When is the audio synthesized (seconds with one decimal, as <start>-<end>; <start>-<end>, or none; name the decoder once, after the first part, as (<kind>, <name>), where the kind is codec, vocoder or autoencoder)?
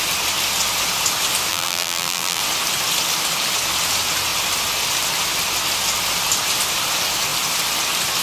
1.5-2.4 (vocoder, BigVGAN v2)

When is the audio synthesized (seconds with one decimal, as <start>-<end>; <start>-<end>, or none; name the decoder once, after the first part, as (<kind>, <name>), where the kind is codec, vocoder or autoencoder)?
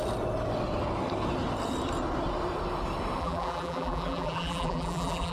3.2-5.3 (vocoder, BigVGAN v2)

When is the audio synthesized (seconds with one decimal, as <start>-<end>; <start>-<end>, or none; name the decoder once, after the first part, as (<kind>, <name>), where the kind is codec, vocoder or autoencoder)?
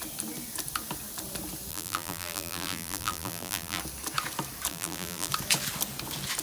1.7-3.8 (vocoder, BigVGAN v2); 4.7-5.3